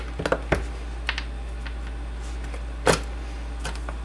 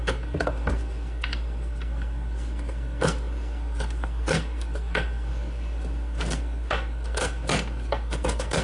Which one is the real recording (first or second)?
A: first